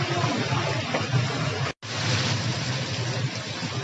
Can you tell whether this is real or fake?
real